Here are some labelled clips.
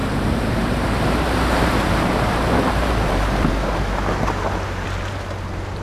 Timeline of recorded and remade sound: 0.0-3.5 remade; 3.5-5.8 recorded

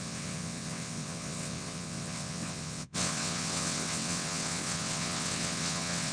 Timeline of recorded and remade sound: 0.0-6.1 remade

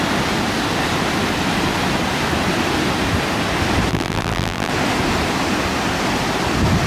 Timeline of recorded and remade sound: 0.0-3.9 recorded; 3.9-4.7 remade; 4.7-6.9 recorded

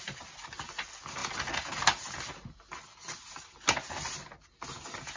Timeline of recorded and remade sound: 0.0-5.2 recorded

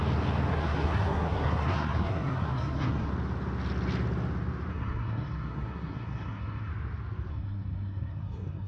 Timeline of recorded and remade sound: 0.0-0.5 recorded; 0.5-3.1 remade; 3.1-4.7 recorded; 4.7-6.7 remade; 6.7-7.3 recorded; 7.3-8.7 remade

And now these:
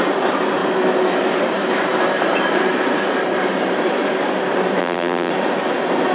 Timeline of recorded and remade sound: 0.0-4.8 recorded; 4.8-5.3 remade; 5.3-6.1 recorded

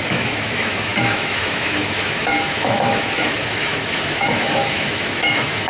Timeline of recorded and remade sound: 0.0-5.7 remade

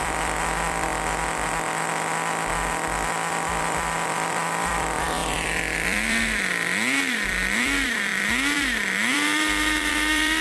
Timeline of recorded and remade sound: 0.0-0.9 remade; 0.9-3.6 recorded; 3.6-10.4 remade